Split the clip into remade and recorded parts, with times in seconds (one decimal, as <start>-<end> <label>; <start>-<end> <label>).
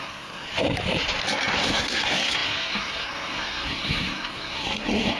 0.0-0.5 remade; 0.5-1.6 recorded; 1.6-5.2 remade